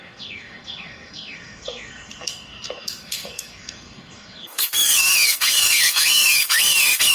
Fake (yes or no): yes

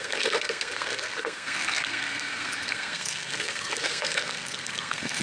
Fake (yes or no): yes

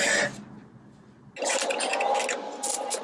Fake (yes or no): no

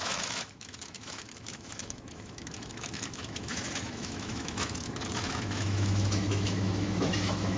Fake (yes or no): yes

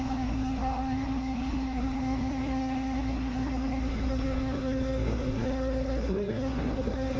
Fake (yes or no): yes